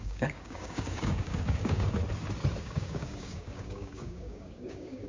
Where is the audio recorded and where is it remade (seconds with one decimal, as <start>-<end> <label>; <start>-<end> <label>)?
0.0-2.0 remade; 2.0-2.6 recorded; 2.6-5.1 remade